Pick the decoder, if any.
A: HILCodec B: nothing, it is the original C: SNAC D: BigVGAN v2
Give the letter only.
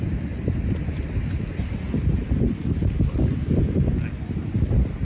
B